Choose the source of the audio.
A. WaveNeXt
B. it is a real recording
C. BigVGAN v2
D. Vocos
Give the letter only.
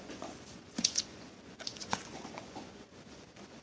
D